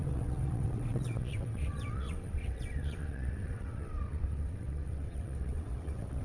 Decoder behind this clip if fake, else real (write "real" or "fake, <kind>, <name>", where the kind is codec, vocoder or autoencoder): fake, vocoder, WaveNeXt